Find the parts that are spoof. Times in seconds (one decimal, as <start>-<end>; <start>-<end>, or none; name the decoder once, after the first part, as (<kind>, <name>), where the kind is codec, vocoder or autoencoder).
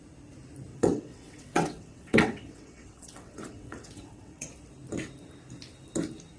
0.7-4.5 (vocoder, WaveNeXt)